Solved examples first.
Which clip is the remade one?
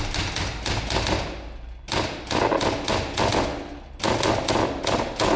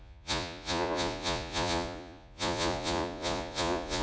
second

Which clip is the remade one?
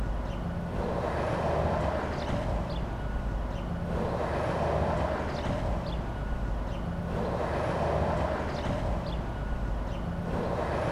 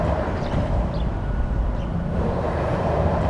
second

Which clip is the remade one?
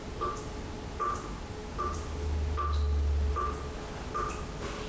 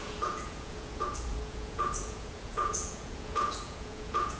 second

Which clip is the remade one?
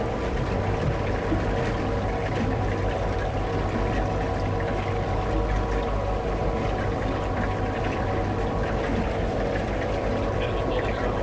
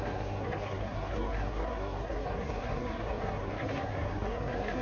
second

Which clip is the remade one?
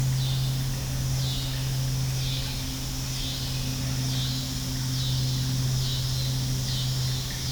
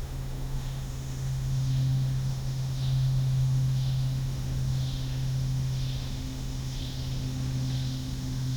second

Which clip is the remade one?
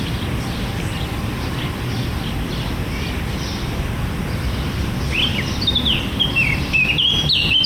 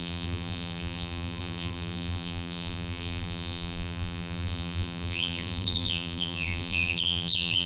second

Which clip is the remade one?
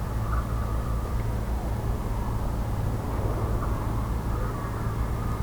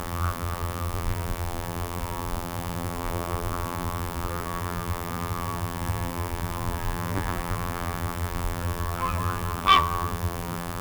second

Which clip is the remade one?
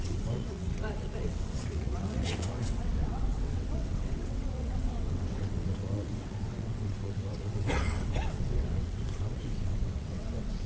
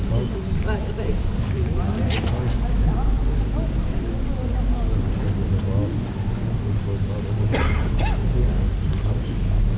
first